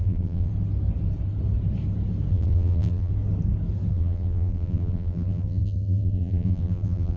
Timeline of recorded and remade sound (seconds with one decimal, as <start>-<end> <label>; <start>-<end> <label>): 0.0-0.5 remade; 0.5-2.3 recorded; 2.3-3.1 remade; 3.1-3.9 recorded; 3.9-7.2 remade